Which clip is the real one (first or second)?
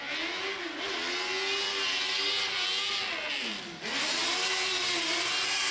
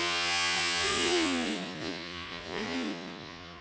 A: first